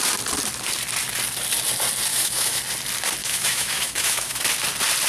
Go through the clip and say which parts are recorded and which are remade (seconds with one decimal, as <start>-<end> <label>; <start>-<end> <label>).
0.0-2.1 recorded; 2.1-2.6 remade; 2.6-3.2 recorded; 3.2-4.4 remade; 4.4-5.1 recorded